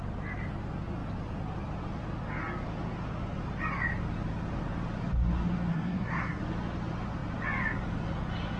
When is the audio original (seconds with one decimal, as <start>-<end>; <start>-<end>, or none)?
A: 0.0-5.7; 6.4-8.6